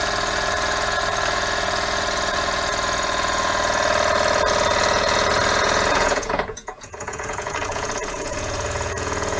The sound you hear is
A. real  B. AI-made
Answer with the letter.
B